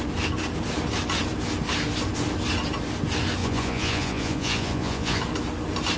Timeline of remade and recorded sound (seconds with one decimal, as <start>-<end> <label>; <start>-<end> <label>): 0.0-3.4 recorded; 3.4-5.2 remade; 5.2-6.0 recorded